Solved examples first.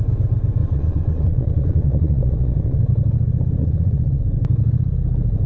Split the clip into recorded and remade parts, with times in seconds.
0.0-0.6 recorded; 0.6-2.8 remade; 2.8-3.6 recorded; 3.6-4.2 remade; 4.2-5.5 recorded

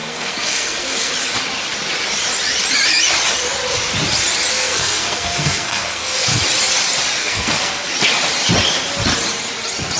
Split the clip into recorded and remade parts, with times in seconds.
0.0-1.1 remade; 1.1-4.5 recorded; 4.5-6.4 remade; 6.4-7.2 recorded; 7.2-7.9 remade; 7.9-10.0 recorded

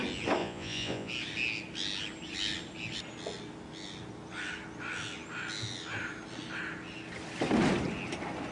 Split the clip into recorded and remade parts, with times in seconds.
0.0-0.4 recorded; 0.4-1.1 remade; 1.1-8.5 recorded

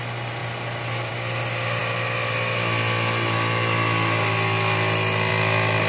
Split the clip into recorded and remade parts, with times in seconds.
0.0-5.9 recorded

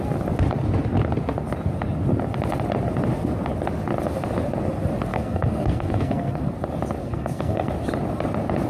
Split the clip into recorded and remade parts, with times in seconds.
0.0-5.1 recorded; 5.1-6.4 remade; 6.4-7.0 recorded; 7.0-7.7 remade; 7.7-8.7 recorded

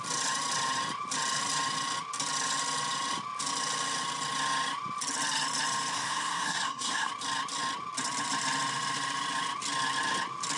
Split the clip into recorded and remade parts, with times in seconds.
0.0-5.9 recorded; 5.9-7.1 remade; 7.1-10.6 recorded